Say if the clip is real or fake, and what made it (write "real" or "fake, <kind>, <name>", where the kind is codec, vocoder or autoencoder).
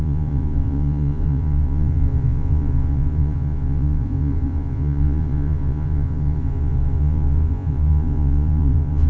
fake, vocoder, Vocos